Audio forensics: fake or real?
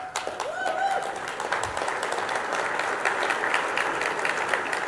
real